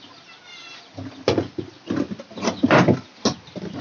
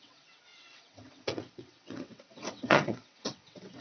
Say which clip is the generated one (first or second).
second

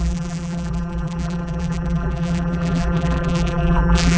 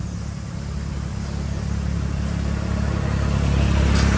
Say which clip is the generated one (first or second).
first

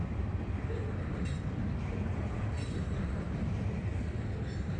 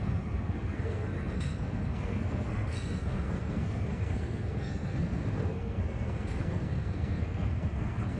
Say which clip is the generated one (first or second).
second